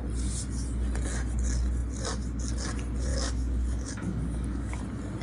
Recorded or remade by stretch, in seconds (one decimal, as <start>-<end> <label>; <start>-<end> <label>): 0.0-3.1 recorded; 3.1-4.8 remade; 4.8-5.2 recorded